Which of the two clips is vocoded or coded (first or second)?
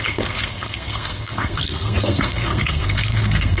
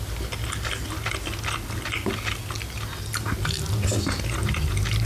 first